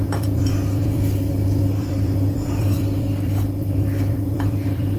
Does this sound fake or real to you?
fake